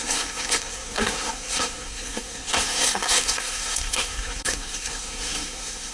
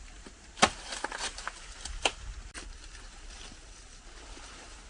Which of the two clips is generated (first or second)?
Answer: first